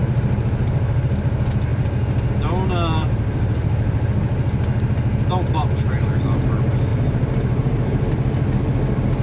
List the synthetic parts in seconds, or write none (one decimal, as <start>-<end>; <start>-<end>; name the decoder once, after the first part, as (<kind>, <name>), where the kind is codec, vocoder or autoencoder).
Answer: 0.0-1.2 (vocoder, BigVGAN v2); 1.7-2.3; 3.0-4.1; 6.9-8.1